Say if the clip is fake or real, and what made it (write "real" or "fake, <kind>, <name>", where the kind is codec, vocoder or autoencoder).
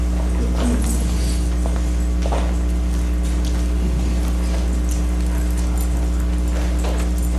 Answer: real